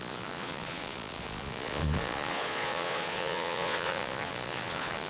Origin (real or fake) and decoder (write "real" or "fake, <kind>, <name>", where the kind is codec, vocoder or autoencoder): fake, vocoder, Vocos